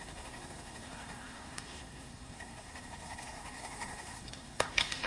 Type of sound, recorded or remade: remade